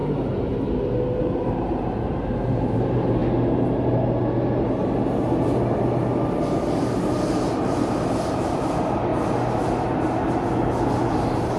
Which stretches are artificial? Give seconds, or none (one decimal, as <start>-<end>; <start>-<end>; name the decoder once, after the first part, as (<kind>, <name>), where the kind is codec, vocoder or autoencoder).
1.2-3.2 (vocoder, BigVGAN v2); 7.3-9.1; 10.9-11.6